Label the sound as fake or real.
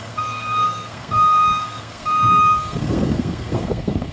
fake